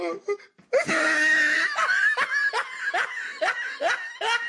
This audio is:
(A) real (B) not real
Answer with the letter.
A